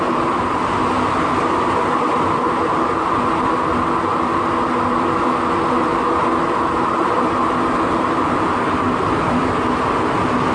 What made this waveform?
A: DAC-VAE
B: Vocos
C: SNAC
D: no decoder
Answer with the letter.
D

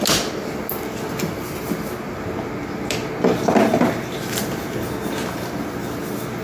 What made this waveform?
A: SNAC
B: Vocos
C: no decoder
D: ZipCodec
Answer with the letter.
C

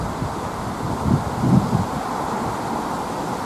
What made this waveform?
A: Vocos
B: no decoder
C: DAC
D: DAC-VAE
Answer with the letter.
B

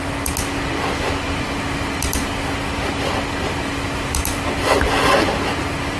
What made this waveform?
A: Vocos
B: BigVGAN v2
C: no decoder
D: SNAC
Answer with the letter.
C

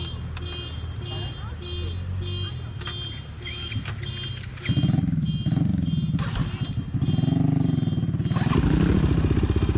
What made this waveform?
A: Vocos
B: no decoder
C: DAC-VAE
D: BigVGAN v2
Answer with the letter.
B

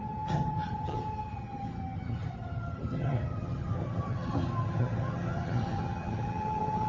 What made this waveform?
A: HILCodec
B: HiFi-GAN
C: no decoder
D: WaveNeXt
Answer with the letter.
B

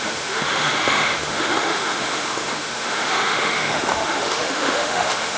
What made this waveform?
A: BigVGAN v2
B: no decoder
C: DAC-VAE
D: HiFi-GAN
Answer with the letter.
C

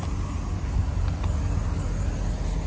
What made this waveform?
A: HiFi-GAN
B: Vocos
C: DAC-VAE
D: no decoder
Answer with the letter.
D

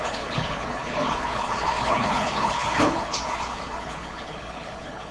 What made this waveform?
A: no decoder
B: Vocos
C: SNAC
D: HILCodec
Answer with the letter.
D